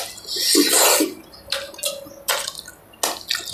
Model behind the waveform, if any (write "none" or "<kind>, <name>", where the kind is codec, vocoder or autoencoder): none